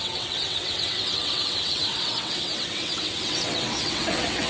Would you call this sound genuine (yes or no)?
no